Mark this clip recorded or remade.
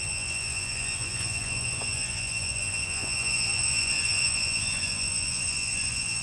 remade